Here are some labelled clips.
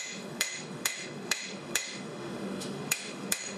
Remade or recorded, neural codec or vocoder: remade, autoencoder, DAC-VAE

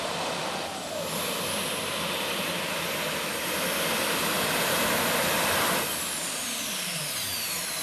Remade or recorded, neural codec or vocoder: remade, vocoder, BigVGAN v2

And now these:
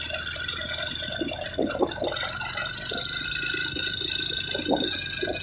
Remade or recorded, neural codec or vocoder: recorded